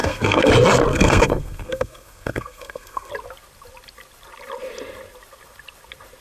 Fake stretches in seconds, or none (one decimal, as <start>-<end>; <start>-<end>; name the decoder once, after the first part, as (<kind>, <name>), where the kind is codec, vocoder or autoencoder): 0.0-0.5 (codec, SNAC); 0.9-3.1